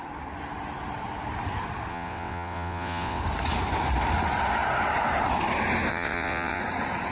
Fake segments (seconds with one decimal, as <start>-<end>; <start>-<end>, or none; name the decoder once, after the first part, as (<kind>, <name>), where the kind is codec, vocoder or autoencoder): 1.9-3.2 (vocoder, WaveNeXt); 5.9-6.6